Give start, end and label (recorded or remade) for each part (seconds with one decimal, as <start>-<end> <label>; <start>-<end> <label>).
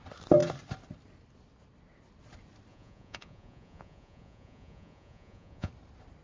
0.0-2.7 recorded; 2.7-5.7 remade; 5.7-6.2 recorded